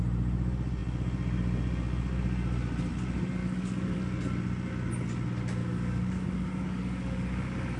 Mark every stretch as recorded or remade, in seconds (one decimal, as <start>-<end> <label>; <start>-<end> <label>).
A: 0.0-3.4 recorded; 3.4-4.0 remade; 4.0-5.6 recorded; 5.6-7.8 remade